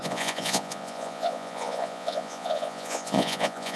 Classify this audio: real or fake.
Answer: fake